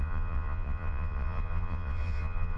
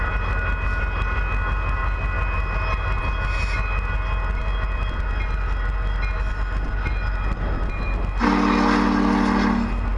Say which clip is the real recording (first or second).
second